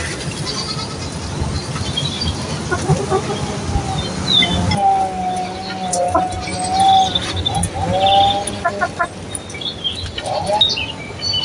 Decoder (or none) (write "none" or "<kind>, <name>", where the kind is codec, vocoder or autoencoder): none